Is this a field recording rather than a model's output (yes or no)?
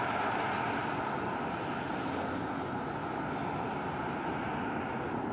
yes